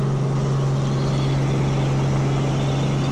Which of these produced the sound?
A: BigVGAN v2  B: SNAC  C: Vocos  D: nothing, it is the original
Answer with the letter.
D